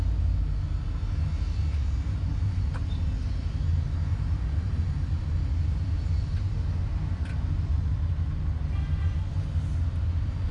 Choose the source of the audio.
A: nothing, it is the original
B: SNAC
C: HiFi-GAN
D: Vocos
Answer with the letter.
A